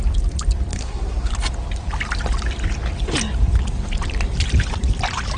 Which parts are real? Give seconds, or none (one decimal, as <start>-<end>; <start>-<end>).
0.0-0.7; 1.3-5.4